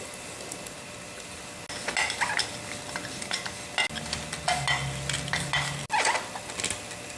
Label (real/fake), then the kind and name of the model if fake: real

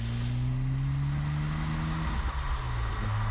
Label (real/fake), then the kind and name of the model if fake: real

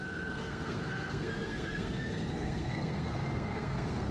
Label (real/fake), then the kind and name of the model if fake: fake, codec, SNAC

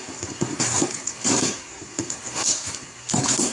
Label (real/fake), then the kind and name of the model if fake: fake, codec, SNAC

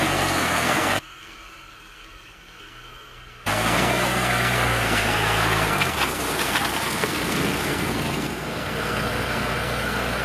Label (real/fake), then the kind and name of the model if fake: fake, codec, SNAC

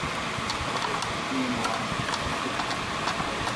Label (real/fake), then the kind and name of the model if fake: real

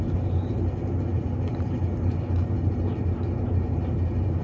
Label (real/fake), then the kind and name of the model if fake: real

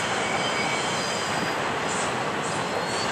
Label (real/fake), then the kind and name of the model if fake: real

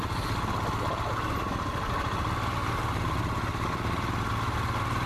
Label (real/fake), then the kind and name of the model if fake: real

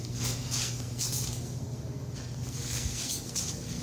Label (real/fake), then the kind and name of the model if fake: fake, codec, SNAC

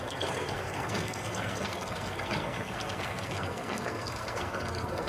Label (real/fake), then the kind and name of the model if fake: fake, codec, SNAC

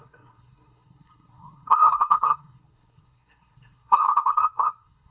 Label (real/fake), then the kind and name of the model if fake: fake, codec, SNAC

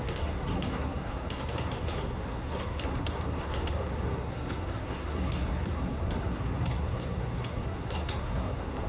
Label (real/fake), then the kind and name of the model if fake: fake, codec, SNAC